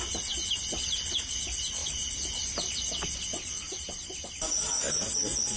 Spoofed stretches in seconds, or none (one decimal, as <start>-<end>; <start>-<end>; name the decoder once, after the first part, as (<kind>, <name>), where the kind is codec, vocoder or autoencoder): none